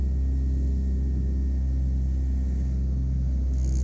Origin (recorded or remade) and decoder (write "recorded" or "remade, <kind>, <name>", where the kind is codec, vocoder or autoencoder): recorded